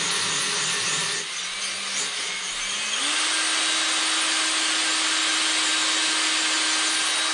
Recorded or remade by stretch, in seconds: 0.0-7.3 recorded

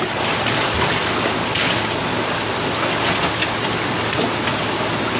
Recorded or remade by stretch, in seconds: 0.0-5.2 recorded

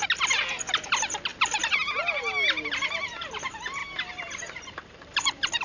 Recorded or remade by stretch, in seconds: 0.0-3.8 recorded; 3.8-5.6 remade

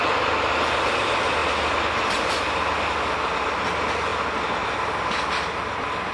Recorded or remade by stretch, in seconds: 0.0-6.1 recorded

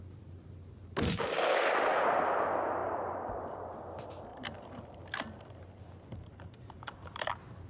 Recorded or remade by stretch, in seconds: 0.0-2.8 recorded; 2.8-3.6 remade; 3.6-4.3 recorded; 4.3-4.8 remade; 4.8-6.1 recorded; 6.1-7.3 remade; 7.3-7.7 recorded